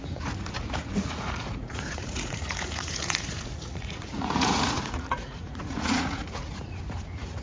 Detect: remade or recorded remade